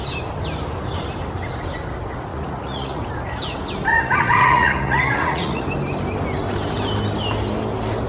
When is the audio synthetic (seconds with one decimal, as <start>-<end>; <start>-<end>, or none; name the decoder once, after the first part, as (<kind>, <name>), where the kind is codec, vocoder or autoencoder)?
2.3-3.0 (vocoder, Vocos); 3.9-5.7